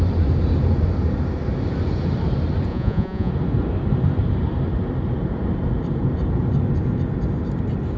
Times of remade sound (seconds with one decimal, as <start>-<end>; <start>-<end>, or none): 2.7-3.3